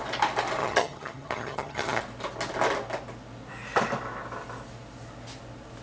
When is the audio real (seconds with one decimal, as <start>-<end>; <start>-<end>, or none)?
0.0-0.6; 2.0-5.8